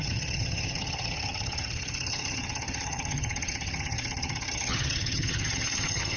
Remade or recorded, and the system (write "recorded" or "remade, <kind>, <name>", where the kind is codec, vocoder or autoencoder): remade, vocoder, HiFi-GAN